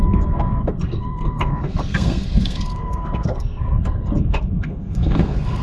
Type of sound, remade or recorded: remade